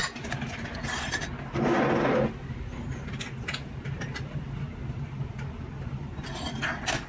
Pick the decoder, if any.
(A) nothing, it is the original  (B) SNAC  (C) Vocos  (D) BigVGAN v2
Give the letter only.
A